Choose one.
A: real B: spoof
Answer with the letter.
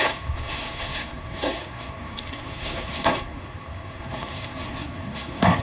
B